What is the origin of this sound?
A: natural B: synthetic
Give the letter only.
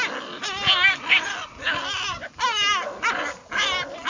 A